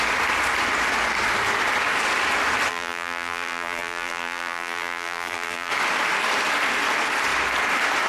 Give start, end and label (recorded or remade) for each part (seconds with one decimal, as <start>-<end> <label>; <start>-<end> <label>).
0.0-2.7 recorded; 2.7-5.7 remade; 5.7-8.1 recorded